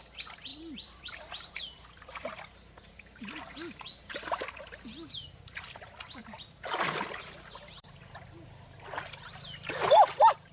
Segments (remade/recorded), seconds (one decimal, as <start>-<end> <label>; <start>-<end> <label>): 0.0-0.5 recorded; 0.5-2.4 remade; 2.4-10.5 recorded